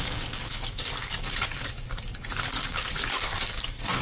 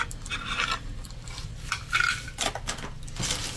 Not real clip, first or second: first